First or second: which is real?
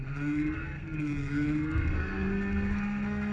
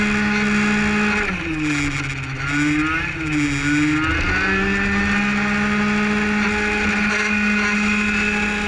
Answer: second